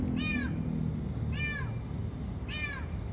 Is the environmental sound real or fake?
real